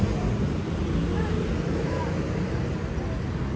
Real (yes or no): yes